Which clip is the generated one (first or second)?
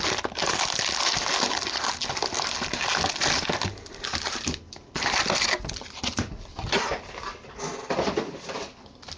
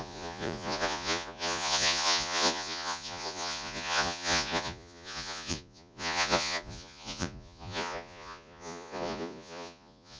second